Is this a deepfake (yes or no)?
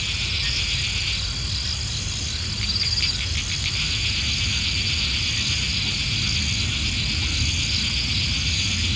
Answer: no